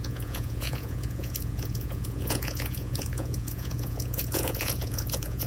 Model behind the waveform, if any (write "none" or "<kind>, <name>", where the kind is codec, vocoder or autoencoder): vocoder, Vocos